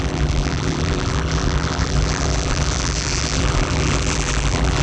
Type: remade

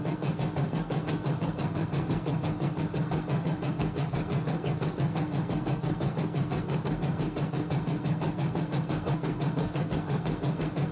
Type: remade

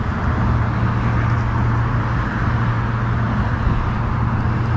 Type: recorded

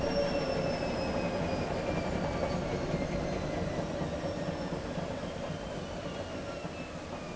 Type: recorded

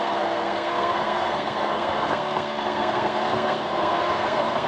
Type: remade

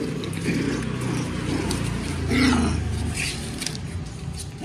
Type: recorded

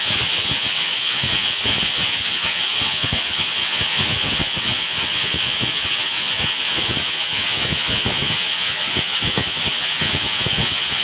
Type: remade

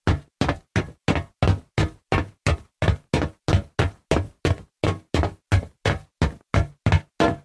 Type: recorded